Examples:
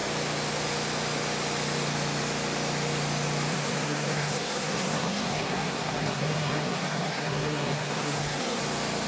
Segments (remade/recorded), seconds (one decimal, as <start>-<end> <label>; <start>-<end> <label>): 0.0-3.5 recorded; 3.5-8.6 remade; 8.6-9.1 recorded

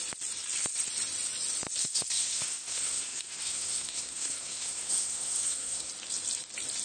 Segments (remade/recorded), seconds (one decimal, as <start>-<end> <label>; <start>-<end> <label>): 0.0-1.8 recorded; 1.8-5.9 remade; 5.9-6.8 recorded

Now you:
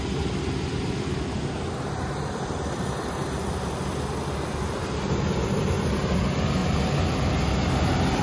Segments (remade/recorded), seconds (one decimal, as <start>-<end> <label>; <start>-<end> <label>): 0.0-8.2 recorded

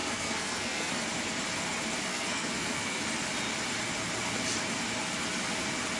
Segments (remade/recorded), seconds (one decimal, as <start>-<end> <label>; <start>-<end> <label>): 0.0-0.9 remade; 0.9-2.1 recorded; 2.1-3.0 remade; 3.0-6.0 recorded